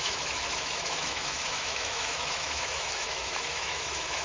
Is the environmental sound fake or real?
fake